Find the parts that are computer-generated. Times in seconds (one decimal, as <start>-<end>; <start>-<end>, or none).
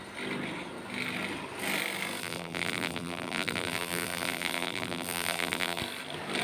2.2-5.8